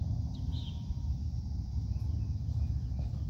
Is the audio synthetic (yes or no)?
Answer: no